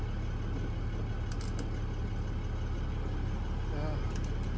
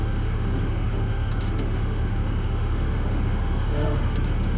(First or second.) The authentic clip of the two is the first